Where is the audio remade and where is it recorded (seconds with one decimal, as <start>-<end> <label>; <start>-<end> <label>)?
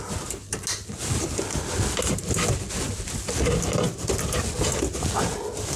0.0-5.8 recorded